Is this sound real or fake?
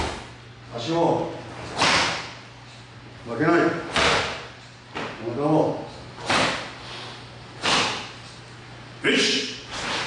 real